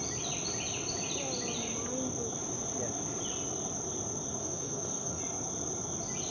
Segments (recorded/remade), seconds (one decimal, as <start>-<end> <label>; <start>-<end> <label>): 0.0-4.4 recorded; 4.4-5.2 remade; 5.2-6.3 recorded